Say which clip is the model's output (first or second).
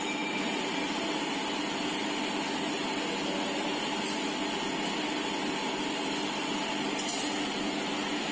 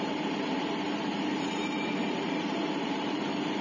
second